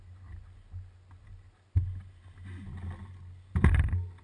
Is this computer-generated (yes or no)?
no